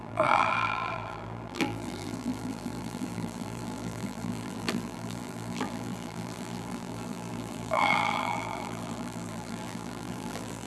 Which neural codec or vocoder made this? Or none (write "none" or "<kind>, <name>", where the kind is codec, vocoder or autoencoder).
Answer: vocoder, BigVGAN v2